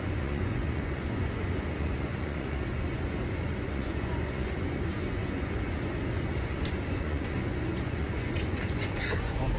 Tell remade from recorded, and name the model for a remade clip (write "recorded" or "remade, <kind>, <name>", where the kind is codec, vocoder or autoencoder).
remade, vocoder, Vocos